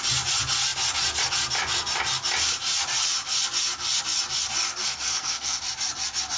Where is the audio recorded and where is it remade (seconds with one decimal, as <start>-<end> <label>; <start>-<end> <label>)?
0.0-4.8 recorded; 4.8-5.6 remade; 5.6-6.4 recorded